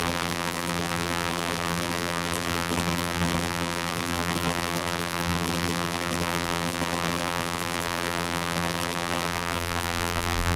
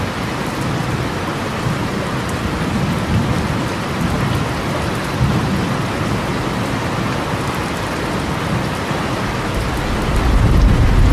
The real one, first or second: second